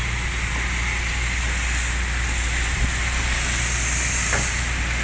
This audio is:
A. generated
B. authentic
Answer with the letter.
B